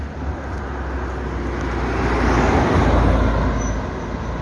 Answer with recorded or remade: recorded